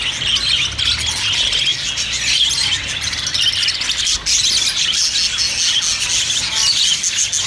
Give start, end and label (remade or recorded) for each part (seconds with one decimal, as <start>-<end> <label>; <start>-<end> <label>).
0.0-7.5 recorded